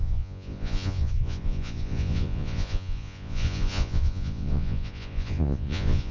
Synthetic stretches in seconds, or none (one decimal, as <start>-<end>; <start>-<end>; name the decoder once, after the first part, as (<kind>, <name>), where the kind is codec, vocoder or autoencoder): 0.0-6.1 (vocoder, Vocos)